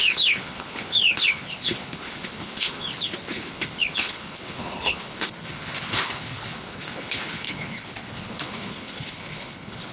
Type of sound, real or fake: fake